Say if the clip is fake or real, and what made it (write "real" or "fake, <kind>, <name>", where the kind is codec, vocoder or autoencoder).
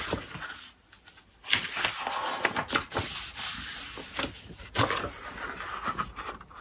real